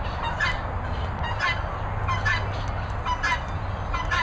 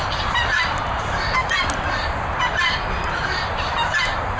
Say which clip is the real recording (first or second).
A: first